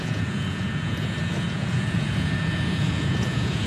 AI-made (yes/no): yes